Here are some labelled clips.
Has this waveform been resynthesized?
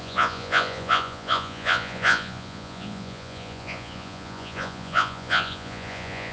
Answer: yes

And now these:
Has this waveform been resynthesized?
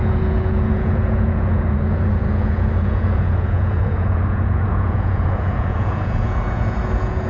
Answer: yes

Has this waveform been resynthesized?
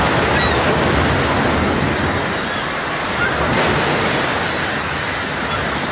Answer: no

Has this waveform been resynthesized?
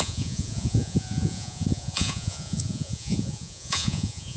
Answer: yes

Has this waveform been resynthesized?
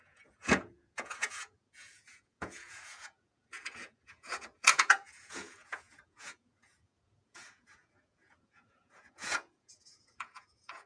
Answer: yes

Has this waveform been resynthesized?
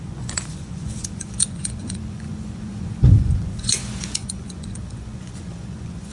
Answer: yes